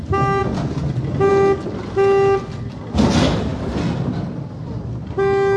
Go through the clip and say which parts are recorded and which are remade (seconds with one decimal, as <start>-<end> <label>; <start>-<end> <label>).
0.0-5.6 recorded